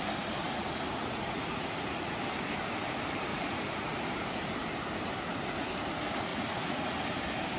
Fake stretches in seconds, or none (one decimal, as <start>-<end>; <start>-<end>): 0.4-2.2; 3.3-4.1; 6.3-7.0